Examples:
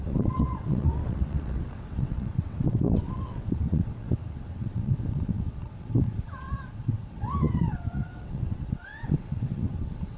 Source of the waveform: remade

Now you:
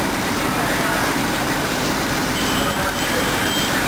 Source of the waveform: remade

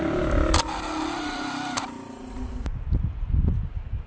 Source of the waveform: recorded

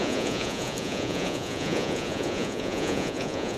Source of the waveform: remade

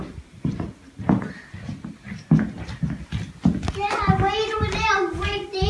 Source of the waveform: recorded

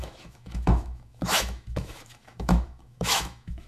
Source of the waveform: remade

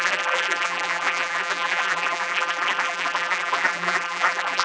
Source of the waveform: remade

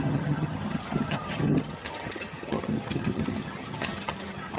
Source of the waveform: remade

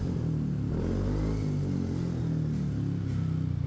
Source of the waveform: recorded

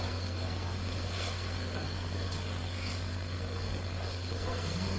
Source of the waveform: remade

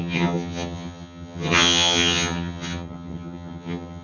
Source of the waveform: remade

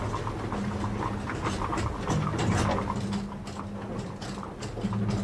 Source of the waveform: recorded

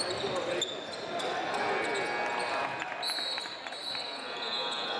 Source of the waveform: recorded